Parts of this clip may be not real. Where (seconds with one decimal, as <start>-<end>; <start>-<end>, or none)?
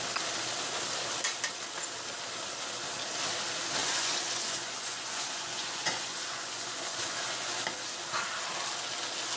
3.8-7.5